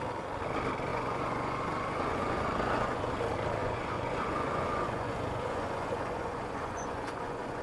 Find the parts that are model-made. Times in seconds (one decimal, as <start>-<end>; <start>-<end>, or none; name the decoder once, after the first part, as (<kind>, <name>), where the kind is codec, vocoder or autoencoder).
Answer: 0.9-3.1 (vocoder, Vocos); 3.6-7.6